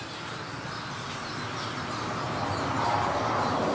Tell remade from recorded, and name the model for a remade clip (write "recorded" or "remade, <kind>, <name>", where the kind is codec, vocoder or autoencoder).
recorded